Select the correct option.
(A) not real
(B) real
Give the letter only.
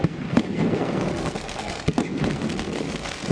A